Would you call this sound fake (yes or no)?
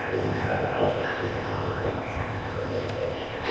yes